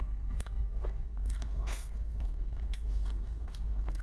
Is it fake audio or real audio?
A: fake